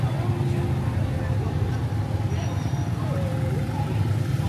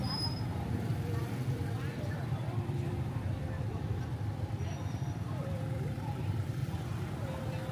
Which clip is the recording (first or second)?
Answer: first